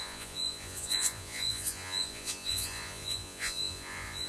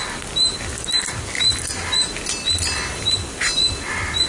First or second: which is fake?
first